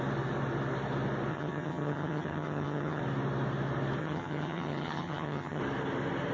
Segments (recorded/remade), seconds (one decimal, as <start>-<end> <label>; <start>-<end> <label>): 0.0-1.3 recorded; 1.3-3.0 remade; 3.0-4.0 recorded; 4.0-5.6 remade; 5.6-6.3 recorded